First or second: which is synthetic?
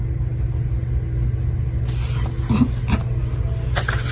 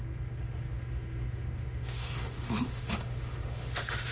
second